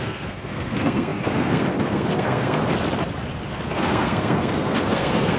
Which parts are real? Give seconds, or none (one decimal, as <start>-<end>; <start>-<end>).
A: 2.6-3.5